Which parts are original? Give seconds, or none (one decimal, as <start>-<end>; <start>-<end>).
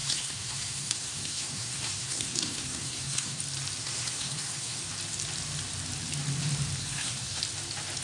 3.4-3.8; 4.8-6.8; 7.4-8.0